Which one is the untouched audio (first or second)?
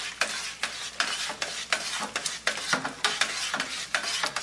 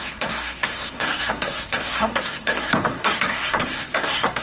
first